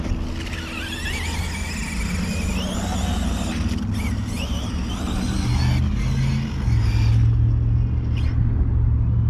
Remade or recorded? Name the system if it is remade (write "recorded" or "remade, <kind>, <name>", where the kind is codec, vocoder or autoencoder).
recorded